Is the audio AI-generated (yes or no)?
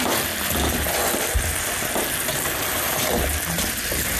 no